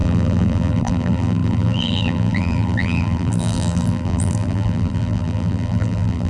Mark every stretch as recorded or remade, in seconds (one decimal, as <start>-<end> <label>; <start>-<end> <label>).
0.0-6.3 remade